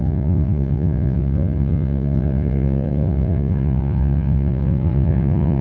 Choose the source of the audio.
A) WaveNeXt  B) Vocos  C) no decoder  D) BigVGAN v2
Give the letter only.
B